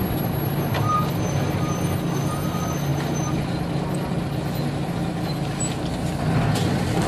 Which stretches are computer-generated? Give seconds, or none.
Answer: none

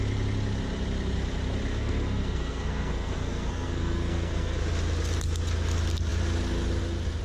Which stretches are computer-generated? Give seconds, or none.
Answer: 1.7-4.6 (codec, SNAC)